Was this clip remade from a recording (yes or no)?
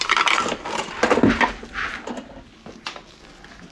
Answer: no